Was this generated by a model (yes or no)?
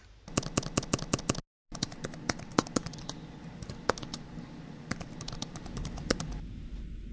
no